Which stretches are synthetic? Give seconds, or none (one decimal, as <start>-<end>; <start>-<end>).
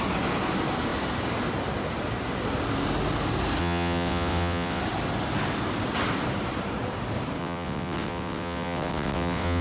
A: 3.6-4.8; 7.4-9.6